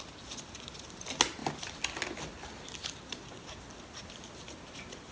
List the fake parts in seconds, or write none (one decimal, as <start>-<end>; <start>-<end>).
none